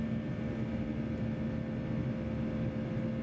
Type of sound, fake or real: real